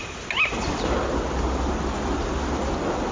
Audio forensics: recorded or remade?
recorded